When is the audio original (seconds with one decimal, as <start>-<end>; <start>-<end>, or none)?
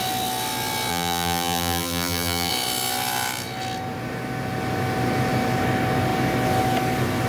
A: 0.0-0.9; 2.5-7.3